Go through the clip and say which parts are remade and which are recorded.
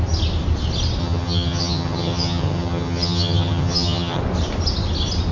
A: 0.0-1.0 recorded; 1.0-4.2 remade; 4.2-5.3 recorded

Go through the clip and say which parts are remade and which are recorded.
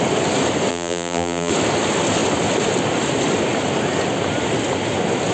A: 0.0-0.7 recorded; 0.7-1.5 remade; 1.5-5.3 recorded